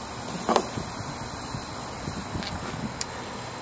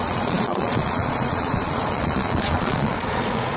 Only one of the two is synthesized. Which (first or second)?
second